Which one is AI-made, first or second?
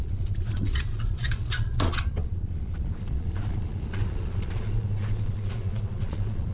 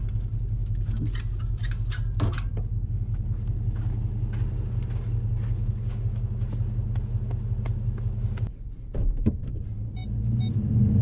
first